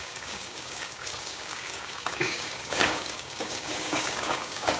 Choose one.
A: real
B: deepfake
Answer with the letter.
B